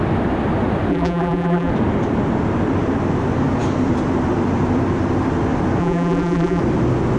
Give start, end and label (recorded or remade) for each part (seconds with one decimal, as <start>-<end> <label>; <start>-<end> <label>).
0.0-0.9 recorded; 0.9-1.7 remade; 1.7-5.8 recorded; 5.8-6.6 remade; 6.6-7.2 recorded